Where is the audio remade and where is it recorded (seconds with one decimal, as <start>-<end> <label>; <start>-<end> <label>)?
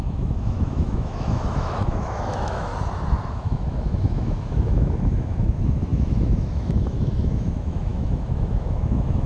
0.0-2.7 remade; 2.7-3.3 recorded; 3.3-9.3 remade